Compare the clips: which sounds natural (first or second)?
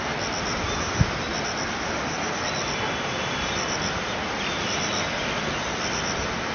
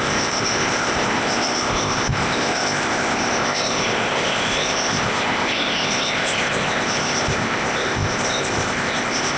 first